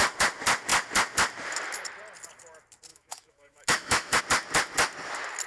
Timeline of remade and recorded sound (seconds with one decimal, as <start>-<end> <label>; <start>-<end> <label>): 0.0-2.9 recorded; 2.9-4.2 remade; 4.2-5.5 recorded